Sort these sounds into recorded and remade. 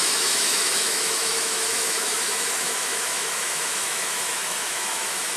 remade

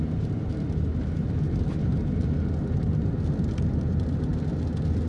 recorded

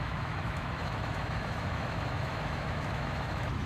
remade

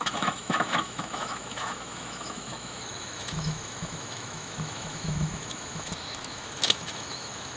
remade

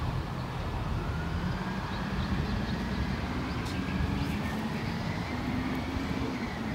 recorded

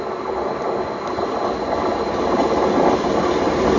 recorded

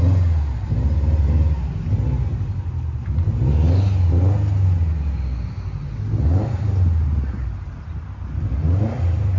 recorded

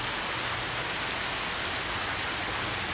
recorded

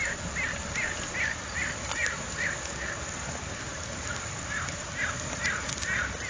recorded